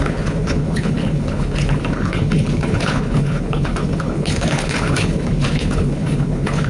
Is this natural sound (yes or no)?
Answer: no